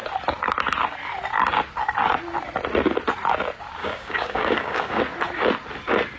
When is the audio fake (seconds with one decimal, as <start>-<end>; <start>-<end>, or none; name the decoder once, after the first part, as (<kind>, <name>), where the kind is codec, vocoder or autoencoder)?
3.8-5.0 (codec, DAC)